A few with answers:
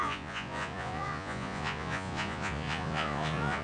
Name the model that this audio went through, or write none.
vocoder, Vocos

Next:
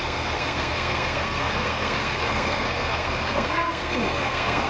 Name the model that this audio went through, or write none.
codec, SNAC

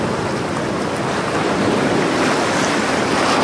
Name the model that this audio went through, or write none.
none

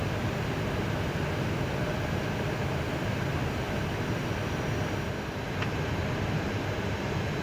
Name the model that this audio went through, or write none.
none